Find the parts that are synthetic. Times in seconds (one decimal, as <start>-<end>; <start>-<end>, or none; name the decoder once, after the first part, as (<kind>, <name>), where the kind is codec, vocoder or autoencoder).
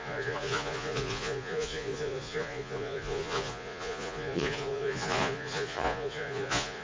0.0-6.8 (vocoder, Vocos)